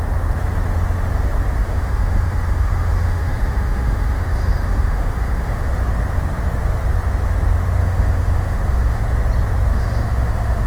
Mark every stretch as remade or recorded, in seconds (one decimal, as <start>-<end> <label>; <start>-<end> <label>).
0.0-1.6 recorded; 1.6-5.7 remade; 5.7-7.8 recorded; 7.8-9.0 remade; 9.0-9.7 recorded; 9.7-10.7 remade